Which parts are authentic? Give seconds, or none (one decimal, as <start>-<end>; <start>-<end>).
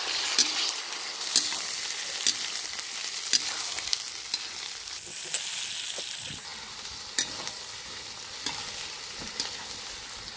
0.0-10.4